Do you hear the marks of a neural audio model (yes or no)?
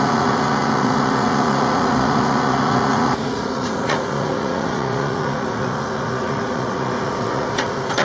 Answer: yes